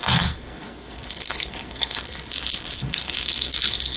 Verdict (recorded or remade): remade